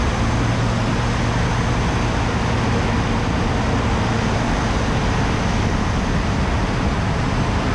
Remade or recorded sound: recorded